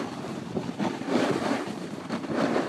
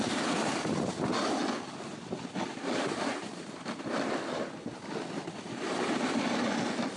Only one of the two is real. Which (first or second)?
second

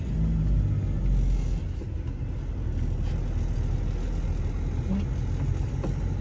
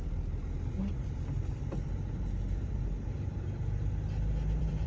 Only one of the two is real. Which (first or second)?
first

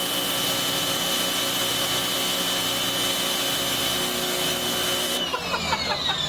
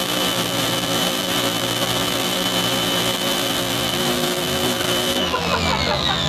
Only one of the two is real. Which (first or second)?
first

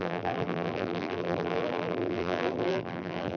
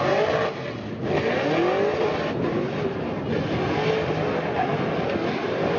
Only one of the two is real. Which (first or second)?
second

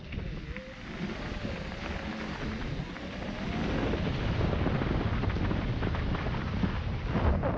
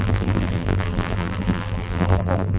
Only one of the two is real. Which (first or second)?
first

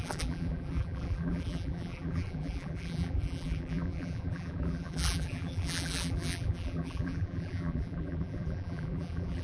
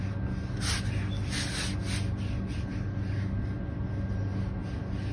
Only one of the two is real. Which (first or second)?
second